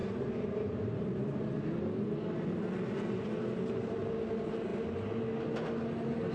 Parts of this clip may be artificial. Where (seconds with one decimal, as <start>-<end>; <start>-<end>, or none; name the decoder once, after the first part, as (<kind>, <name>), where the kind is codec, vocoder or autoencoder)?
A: 0.0-1.4 (vocoder, BigVGAN v2)